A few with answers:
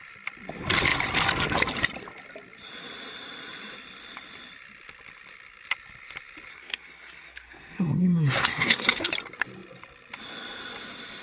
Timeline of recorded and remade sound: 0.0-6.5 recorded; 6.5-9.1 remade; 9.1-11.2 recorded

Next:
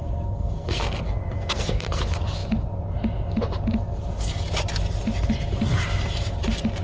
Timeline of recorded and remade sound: 0.0-2.0 remade; 2.0-6.8 recorded

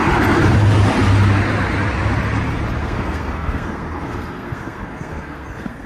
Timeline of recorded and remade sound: 0.0-2.8 recorded; 2.8-5.9 remade